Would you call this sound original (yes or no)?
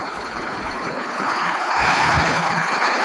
no